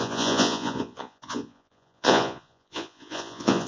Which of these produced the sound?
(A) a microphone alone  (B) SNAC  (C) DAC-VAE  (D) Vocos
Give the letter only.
D